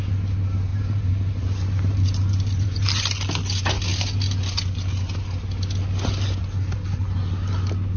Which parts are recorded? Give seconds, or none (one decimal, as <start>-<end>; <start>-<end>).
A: 0.0-0.7; 3.0-8.0